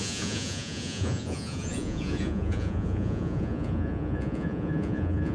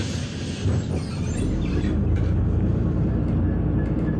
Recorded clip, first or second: second